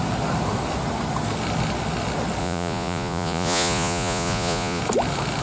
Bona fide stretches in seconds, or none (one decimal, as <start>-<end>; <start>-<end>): 0.0-2.4; 4.8-5.4